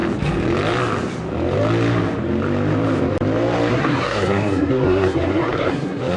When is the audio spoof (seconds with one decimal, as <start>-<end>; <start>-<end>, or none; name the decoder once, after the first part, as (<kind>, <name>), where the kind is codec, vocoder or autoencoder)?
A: 3.7-6.2 (codec, SNAC)